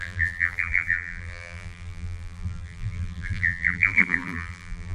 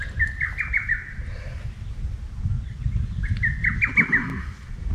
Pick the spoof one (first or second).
first